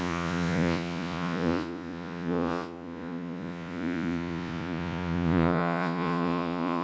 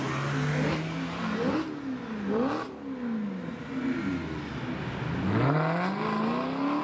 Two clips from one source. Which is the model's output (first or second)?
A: first